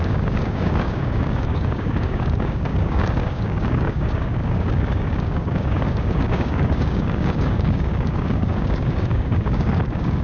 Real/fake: fake